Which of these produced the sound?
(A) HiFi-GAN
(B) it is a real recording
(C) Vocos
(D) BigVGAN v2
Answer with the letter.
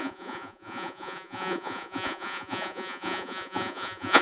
C